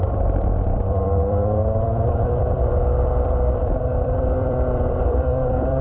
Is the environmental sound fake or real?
fake